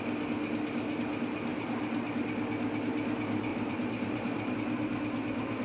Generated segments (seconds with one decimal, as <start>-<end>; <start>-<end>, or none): 1.5-2.2; 3.5-4.5